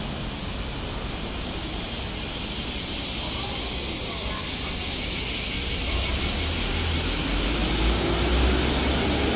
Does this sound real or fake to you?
real